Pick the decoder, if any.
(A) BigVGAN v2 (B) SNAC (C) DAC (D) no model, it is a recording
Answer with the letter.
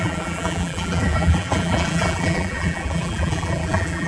A